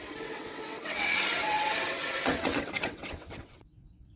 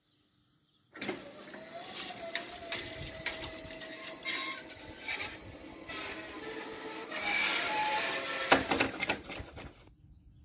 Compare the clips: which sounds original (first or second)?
second